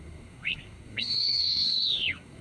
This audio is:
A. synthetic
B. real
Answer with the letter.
A